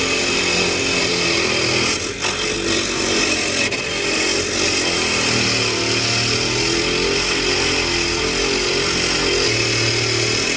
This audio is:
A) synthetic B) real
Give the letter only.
B